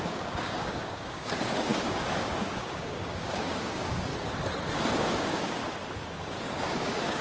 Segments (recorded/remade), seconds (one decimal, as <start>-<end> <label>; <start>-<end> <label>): 0.0-4.1 remade; 4.1-4.9 recorded; 4.9-5.6 remade; 5.6-6.6 recorded; 6.6-7.2 remade